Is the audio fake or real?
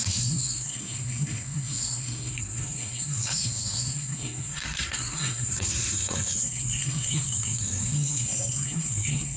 fake